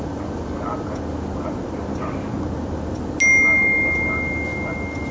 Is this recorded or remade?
recorded